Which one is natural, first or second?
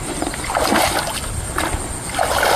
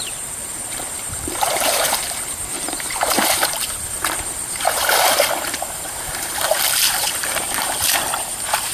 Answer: first